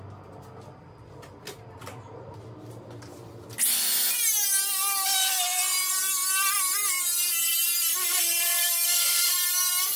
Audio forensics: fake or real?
real